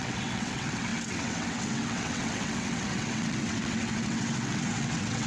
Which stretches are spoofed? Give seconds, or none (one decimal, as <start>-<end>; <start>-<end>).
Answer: 0.0-5.3